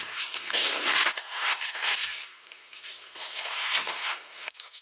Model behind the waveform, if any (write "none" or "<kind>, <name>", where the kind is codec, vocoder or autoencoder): codec, SNAC